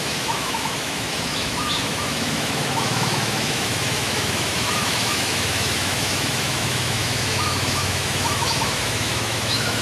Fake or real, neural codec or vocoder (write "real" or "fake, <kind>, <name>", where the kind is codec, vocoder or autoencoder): fake, autoencoder, DAC-VAE